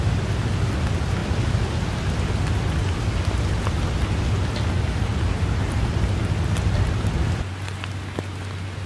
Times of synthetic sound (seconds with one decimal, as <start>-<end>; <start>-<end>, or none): none